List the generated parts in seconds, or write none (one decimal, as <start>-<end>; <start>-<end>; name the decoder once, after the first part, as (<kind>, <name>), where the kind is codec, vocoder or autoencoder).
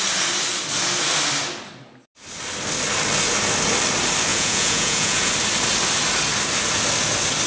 4.3-5.3 (vocoder, Vocos)